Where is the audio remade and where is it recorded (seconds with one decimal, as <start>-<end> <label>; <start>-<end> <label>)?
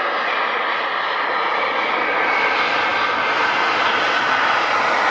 0.0-5.1 recorded